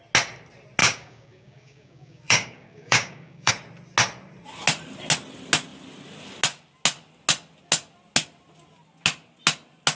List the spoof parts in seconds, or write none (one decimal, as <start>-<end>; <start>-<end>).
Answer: 0.8-3.5